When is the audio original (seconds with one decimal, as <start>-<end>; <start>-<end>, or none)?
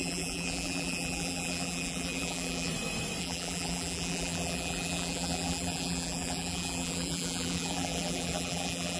2.7-3.2